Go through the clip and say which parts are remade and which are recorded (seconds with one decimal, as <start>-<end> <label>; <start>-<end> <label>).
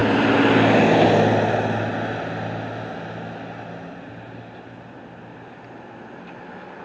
0.0-6.8 recorded